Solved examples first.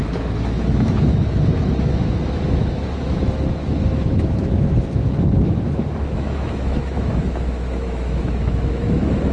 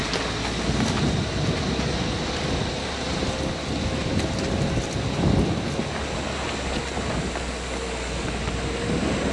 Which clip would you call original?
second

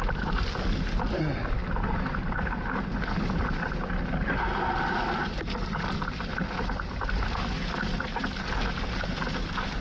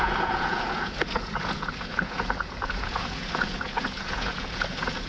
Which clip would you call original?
first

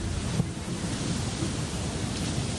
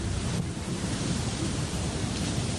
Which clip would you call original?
first